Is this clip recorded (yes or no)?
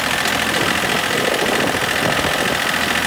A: yes